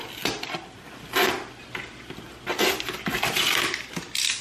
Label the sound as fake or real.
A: real